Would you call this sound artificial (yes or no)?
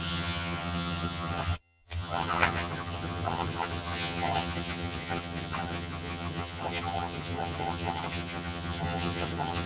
yes